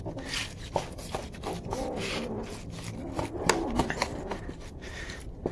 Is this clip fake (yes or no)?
no